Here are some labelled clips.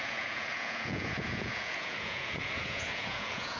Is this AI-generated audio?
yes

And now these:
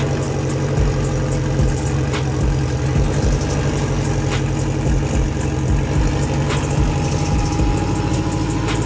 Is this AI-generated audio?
no